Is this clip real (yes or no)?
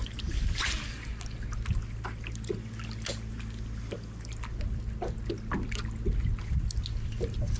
yes